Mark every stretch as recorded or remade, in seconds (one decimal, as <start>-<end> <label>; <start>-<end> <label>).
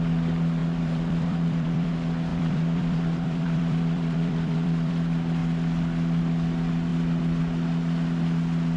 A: 0.0-0.6 recorded; 0.6-1.9 remade; 1.9-2.3 recorded; 2.3-4.9 remade; 4.9-8.8 recorded